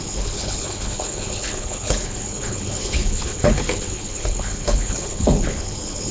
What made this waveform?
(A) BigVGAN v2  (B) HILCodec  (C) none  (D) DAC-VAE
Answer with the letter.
B